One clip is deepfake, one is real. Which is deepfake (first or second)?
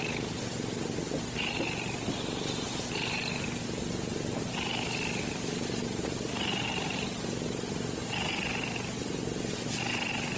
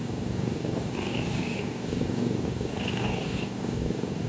second